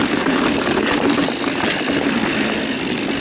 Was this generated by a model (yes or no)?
no